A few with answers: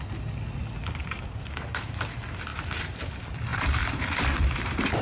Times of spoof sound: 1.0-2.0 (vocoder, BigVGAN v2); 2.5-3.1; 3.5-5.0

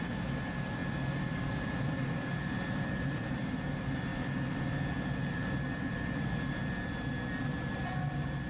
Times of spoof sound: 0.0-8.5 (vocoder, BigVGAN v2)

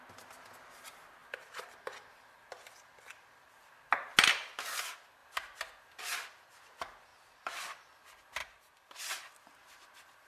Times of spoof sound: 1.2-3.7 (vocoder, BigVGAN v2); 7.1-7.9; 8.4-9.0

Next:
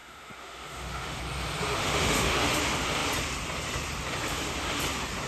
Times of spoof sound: 0.0-1.2 (autoencoder, DAC-VAE); 1.8-2.6

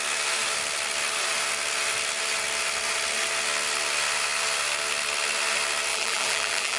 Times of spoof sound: 5.9-6.8 (vocoder, BigVGAN v2)

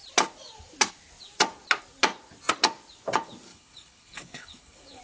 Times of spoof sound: 3.5-5.0 (codec, HILCodec)

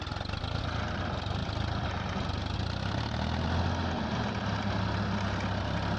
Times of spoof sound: none